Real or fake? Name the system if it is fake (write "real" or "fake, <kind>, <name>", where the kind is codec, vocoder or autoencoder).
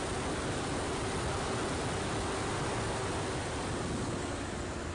real